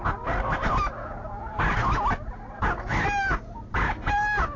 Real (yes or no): yes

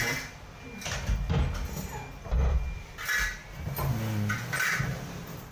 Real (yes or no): yes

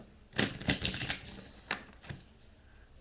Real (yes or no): yes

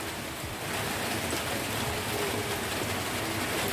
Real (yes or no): yes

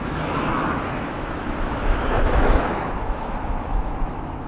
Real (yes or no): no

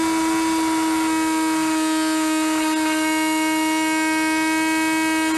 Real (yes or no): yes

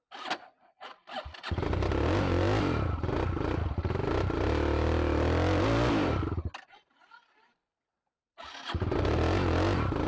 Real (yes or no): yes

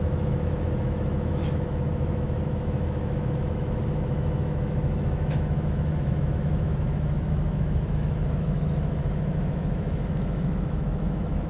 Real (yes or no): no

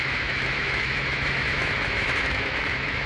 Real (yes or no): no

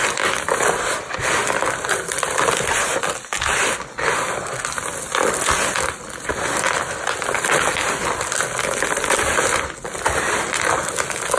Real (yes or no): yes